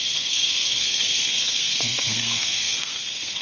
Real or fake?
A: fake